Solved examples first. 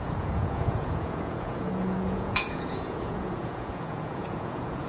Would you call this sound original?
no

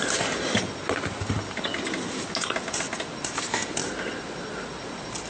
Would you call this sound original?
yes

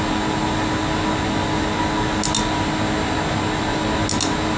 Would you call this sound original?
yes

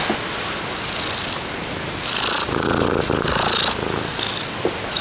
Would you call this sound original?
yes